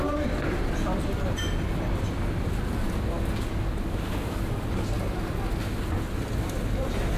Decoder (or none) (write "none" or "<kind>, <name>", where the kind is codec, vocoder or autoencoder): none